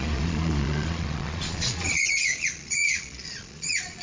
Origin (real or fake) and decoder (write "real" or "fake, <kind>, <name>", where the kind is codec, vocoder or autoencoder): fake, vocoder, Vocos